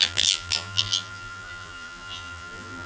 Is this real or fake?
fake